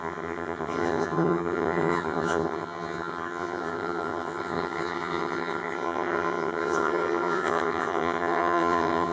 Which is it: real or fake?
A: fake